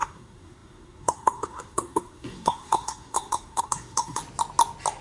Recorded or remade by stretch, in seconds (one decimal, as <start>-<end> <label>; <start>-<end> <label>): 0.0-4.2 remade; 4.2-5.0 recorded